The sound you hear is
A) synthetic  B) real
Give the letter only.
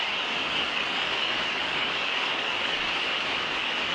A